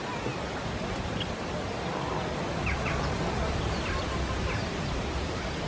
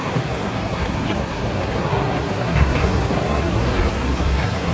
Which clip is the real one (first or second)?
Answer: first